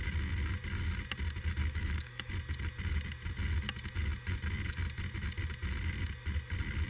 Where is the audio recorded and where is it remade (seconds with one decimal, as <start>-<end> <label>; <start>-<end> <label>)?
0.0-1.6 recorded; 1.6-2.3 remade; 2.3-6.9 recorded